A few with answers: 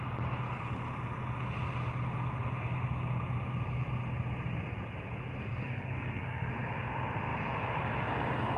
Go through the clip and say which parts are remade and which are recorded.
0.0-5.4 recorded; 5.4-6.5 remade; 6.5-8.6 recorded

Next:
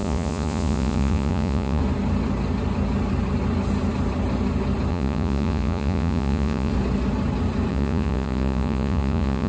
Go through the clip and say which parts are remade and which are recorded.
0.0-1.8 remade; 1.8-4.9 recorded; 4.9-6.7 remade; 6.7-7.7 recorded; 7.7-9.5 remade

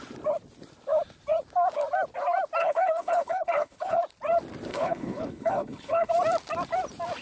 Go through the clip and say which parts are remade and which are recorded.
0.0-2.6 recorded; 2.6-4.0 remade; 4.0-4.7 recorded; 4.7-6.1 remade; 6.1-7.2 recorded